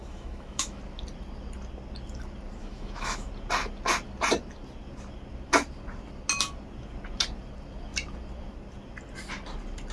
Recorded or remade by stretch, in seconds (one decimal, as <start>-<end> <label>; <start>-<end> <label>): 0.0-0.8 remade; 0.8-2.6 recorded; 2.6-3.3 remade; 3.3-9.9 recorded